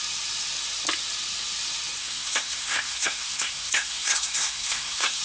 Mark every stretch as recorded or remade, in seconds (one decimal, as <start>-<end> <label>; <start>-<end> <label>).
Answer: 0.0-2.0 recorded; 2.0-5.2 remade